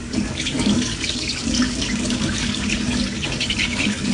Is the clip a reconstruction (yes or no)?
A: yes